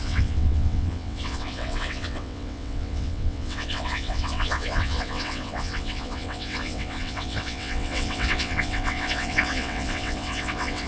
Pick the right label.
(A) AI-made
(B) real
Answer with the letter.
A